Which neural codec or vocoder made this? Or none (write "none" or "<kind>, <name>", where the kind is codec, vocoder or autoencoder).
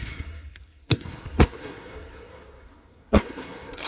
codec, SNAC